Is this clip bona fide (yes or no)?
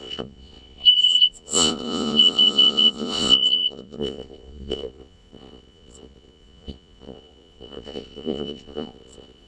no